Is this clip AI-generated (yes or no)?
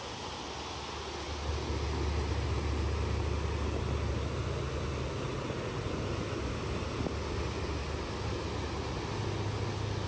no